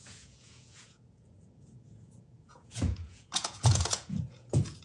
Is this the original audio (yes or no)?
no